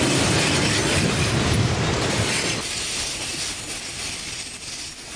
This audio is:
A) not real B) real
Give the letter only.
B